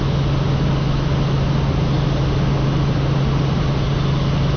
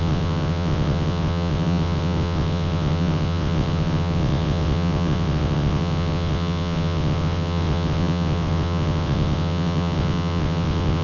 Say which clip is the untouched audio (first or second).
first